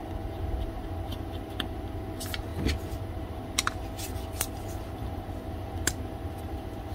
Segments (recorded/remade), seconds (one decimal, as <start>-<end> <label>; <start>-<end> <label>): 0.0-6.9 recorded